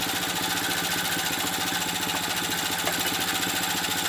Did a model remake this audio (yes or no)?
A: no